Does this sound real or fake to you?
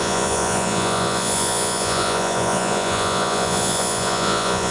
fake